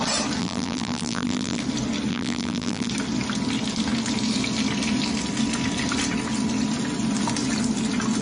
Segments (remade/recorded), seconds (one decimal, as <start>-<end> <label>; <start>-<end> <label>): 0.0-0.4 recorded; 0.4-1.6 remade; 1.6-2.1 recorded; 2.1-2.9 remade; 2.9-8.2 recorded